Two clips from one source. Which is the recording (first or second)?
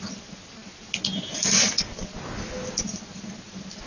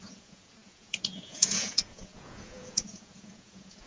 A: first